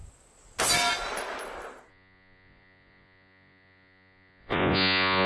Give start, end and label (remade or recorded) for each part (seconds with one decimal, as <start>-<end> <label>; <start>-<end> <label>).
0.0-1.9 recorded; 1.9-5.3 remade